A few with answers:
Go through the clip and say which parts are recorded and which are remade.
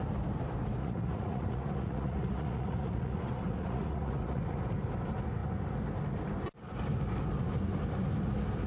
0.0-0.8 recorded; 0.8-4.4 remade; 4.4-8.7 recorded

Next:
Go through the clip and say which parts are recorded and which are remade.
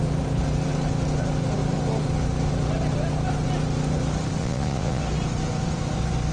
0.0-4.4 recorded; 4.4-5.0 remade; 5.0-6.3 recorded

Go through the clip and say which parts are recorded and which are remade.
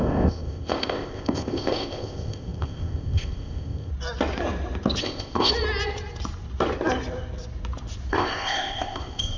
0.0-3.9 remade; 3.9-5.0 recorded; 5.0-5.5 remade; 5.5-8.1 recorded; 8.1-9.4 remade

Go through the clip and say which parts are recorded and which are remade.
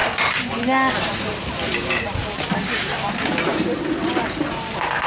0.0-5.1 recorded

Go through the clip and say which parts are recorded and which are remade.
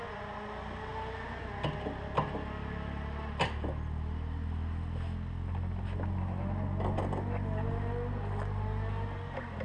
0.0-9.6 recorded